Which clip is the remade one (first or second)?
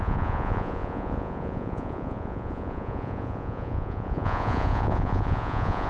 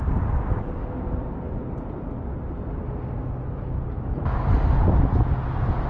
first